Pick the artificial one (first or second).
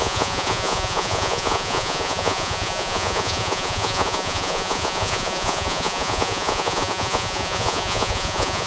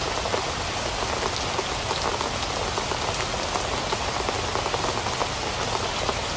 first